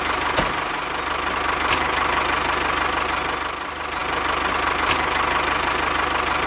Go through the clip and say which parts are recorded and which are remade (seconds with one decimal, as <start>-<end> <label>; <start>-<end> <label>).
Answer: 0.0-6.5 recorded